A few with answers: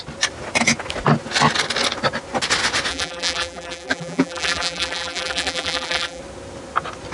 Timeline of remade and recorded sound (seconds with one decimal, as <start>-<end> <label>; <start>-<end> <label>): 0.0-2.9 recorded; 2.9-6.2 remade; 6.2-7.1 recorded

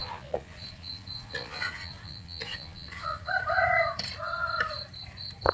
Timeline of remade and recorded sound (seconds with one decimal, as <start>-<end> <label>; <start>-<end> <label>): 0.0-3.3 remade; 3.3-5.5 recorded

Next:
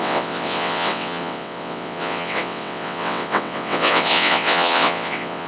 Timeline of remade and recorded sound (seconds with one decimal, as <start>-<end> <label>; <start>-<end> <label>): 0.0-5.5 remade

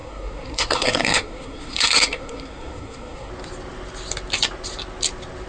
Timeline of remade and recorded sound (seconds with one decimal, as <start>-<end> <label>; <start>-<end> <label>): 0.0-3.3 remade; 3.3-5.5 recorded

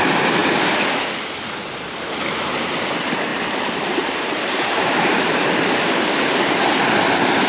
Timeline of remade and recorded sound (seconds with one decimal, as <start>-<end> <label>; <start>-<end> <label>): 0.0-3.3 recorded; 3.3-6.8 remade; 6.8-7.5 recorded